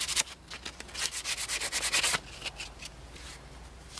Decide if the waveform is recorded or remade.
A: recorded